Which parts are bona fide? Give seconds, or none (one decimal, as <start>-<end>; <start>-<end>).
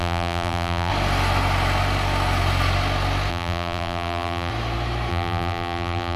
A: 0.9-3.3; 4.5-5.1